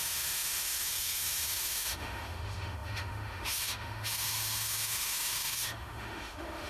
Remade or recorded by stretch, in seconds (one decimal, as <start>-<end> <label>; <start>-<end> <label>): 0.0-6.7 remade